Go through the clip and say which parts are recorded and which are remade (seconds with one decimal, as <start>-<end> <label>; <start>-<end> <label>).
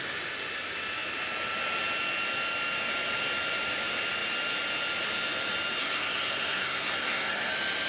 0.0-5.8 recorded; 5.8-7.5 remade; 7.5-7.9 recorded